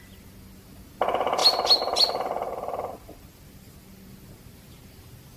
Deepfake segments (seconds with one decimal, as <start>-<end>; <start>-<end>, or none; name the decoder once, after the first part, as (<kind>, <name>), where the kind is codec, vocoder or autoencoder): none